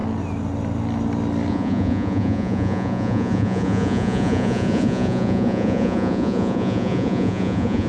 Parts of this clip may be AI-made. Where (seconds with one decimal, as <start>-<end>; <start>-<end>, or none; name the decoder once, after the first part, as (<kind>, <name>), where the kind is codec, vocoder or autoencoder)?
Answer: 1.5-7.9 (vocoder, Vocos)